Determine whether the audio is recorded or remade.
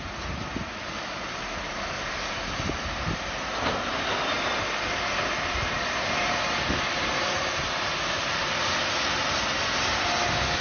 remade